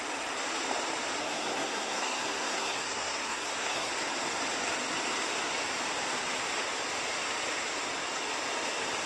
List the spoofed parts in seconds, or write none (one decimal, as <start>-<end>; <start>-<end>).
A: 1.2-3.9